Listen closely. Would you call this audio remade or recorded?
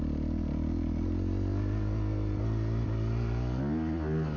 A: recorded